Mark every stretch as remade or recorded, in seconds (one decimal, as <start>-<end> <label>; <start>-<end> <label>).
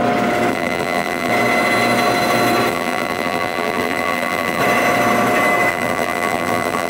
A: 0.0-0.5 recorded; 0.5-1.3 remade; 1.3-2.7 recorded; 2.7-4.6 remade; 4.6-5.7 recorded; 5.7-6.9 remade